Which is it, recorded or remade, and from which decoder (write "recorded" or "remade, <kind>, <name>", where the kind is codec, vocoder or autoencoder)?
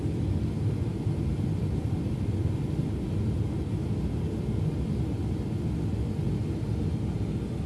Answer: recorded